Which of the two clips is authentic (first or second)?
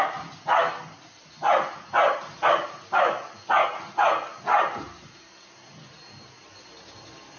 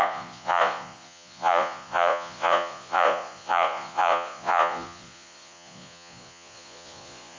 first